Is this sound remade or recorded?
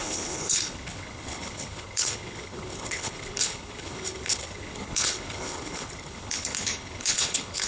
remade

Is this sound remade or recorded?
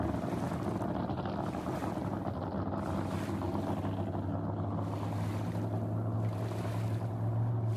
recorded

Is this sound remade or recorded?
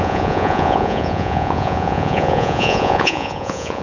remade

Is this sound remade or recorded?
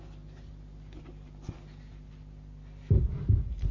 recorded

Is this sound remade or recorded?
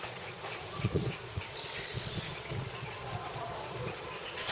remade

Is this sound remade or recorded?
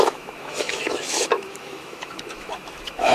remade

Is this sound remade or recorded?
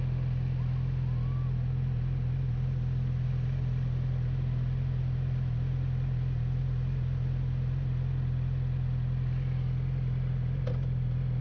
recorded